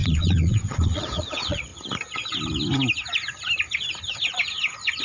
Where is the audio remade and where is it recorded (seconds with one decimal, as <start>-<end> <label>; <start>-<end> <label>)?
0.0-1.7 remade; 1.7-5.0 recorded